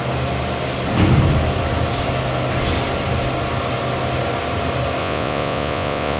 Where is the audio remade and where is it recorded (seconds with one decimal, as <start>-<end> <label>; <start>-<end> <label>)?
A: 0.0-5.0 recorded; 5.0-6.2 remade